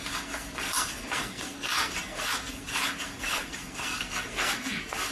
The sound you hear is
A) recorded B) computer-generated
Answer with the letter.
B